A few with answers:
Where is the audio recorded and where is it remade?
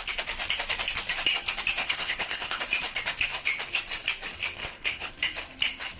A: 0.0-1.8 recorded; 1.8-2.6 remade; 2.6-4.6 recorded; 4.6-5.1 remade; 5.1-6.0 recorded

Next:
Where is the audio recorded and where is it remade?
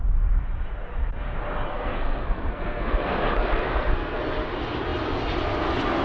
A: 0.0-1.7 recorded; 1.7-4.2 remade; 4.2-6.0 recorded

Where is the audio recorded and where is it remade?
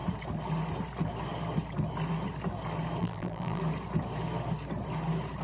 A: 0.0-3.0 recorded; 3.0-3.6 remade; 3.6-5.4 recorded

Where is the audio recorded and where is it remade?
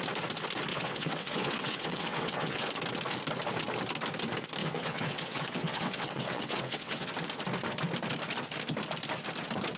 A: 0.0-0.7 recorded; 0.7-2.7 remade; 2.7-4.6 recorded; 4.6-7.1 remade; 7.1-9.8 recorded